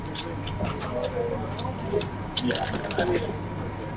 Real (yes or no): yes